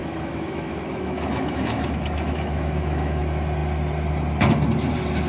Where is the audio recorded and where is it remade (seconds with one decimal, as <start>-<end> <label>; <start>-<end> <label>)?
0.0-3.2 remade; 3.2-5.3 recorded